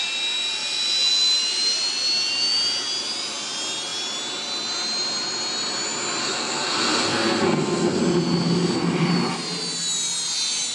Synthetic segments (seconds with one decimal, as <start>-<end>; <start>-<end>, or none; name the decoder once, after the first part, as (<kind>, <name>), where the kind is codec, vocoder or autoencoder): 6.2-8.0 (codec, SNAC)